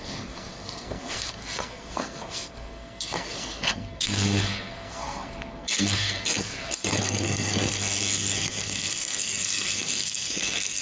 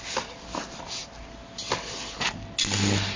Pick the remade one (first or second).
first